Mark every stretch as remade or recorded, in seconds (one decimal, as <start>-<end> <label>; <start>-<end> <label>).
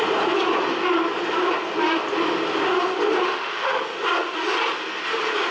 0.0-3.3 recorded; 3.3-3.8 remade; 3.8-5.5 recorded